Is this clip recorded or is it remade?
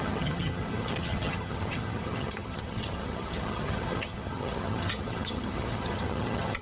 remade